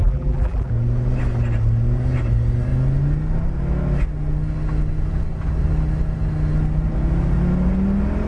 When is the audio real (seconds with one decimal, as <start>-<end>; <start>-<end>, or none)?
0.7-8.3